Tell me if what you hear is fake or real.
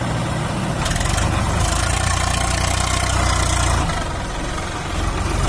real